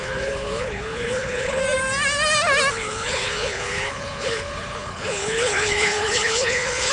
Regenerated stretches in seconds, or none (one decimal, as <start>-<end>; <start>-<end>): 0.0-1.6; 2.7-6.9